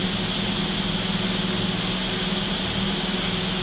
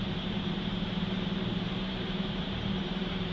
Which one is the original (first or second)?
first